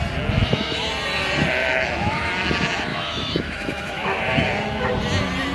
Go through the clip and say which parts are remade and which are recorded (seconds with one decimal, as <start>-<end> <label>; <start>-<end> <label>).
0.0-0.4 recorded; 0.4-0.9 remade; 0.9-1.6 recorded; 1.6-2.3 remade; 2.3-2.9 recorded; 2.9-4.2 remade; 4.2-5.5 recorded